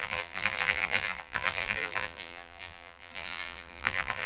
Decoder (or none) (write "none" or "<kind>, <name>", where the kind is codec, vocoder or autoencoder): vocoder, BigVGAN v2